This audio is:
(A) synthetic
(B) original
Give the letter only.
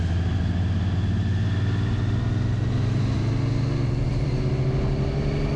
B